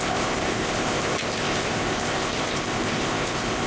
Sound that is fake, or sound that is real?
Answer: fake